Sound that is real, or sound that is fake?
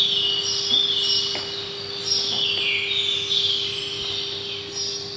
real